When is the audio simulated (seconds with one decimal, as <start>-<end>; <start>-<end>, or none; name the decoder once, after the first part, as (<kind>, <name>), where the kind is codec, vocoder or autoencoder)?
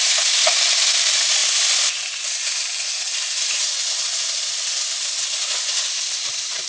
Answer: none